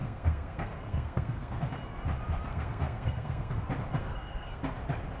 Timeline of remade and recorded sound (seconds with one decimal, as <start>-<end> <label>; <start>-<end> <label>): 0.0-1.6 remade; 1.6-2.5 recorded; 2.5-3.6 remade; 3.6-4.0 recorded; 4.0-4.6 remade; 4.6-5.2 recorded